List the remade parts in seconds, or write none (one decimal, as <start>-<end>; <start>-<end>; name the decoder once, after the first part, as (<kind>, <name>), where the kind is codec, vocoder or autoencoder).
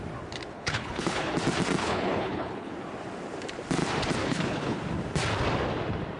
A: 0.5-1.3 (codec, HILCodec); 1.8-2.7; 4.2-4.8